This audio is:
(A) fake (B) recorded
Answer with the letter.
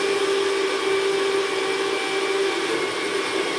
B